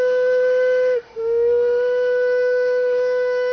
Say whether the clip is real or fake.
fake